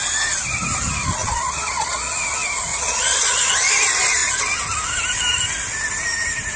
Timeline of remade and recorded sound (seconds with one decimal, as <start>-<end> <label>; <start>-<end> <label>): 0.0-1.2 recorded; 1.2-2.1 remade; 2.1-2.7 recorded; 2.7-3.5 remade; 3.5-6.6 recorded